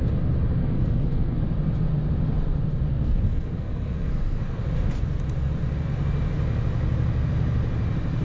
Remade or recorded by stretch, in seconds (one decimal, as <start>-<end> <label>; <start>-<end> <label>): 0.0-0.6 recorded; 0.6-1.4 remade; 1.4-2.9 recorded; 2.9-4.6 remade; 4.6-8.2 recorded